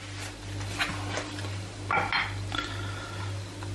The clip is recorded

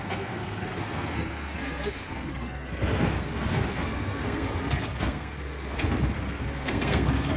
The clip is remade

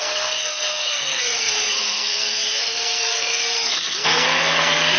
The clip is remade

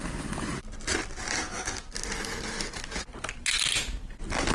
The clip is recorded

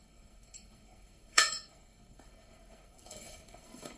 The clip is remade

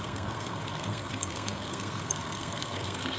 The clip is remade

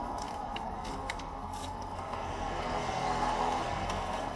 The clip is remade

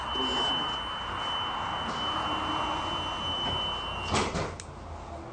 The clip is recorded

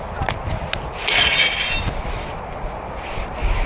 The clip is recorded